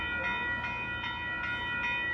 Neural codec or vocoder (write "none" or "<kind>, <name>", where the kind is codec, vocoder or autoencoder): none